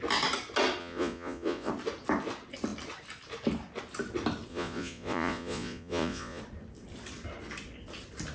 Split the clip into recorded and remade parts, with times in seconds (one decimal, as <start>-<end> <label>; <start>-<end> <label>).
0.0-0.8 recorded; 0.8-1.7 remade; 1.7-4.5 recorded; 4.5-6.4 remade; 6.4-8.3 recorded